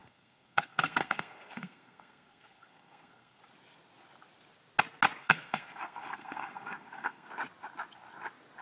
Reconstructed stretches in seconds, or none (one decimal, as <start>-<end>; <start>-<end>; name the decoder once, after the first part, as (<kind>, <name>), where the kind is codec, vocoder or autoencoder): 0.0-3.4 (codec, SNAC); 5.2-7.3

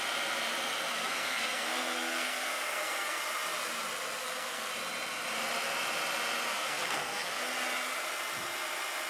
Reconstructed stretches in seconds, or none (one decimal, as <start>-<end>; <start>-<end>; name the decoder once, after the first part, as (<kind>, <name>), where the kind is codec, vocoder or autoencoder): 0.9-3.2 (codec, SNAC); 4.2-4.7; 6.5-7.4

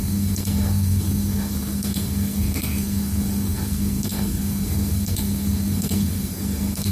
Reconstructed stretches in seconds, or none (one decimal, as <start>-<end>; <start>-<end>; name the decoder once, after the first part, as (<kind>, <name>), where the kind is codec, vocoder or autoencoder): 0.0-6.9 (codec, SNAC)

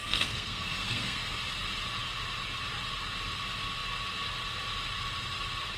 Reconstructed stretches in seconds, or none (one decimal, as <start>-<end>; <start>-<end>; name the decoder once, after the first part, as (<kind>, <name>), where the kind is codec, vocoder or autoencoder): 0.0-1.4 (codec, SNAC)